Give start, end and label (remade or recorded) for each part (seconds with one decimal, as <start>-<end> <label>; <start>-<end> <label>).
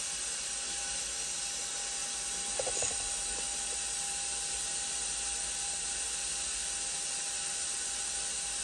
0.0-8.6 recorded